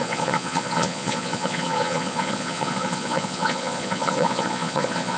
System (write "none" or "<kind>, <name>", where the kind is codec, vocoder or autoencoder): vocoder, Vocos